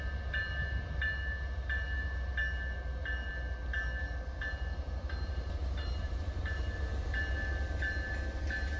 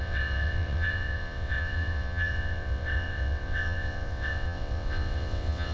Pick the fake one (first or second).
second